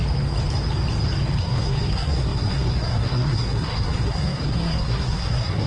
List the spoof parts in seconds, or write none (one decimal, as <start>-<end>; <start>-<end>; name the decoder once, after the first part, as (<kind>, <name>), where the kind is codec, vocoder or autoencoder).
1.4-5.7 (codec, SNAC)